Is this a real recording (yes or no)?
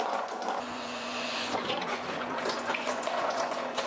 no